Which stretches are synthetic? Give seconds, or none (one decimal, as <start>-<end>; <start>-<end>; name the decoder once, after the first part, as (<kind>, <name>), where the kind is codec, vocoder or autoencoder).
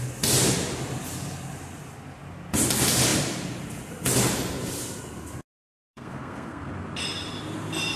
5.6-6.7 (codec, SNAC)